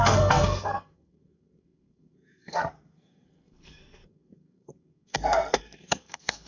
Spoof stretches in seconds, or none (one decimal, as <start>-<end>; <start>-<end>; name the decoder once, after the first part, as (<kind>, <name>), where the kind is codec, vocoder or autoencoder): 0.0-6.5 (codec, SNAC)